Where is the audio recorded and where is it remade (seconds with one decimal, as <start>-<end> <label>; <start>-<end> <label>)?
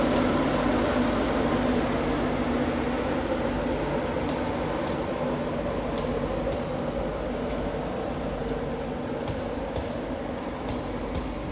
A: 0.0-11.5 recorded